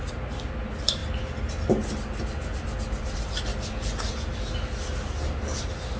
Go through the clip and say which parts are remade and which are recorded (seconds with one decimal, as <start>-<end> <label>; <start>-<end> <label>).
0.0-6.0 recorded